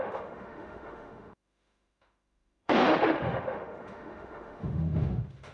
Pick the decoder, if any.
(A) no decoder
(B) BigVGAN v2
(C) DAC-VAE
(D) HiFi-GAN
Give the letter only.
C